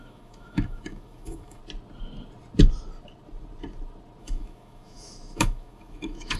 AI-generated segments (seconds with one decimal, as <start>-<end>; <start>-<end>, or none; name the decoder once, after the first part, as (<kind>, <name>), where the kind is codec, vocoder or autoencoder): 0.0-1.6 (autoencoder, DAC-VAE); 4.2-6.4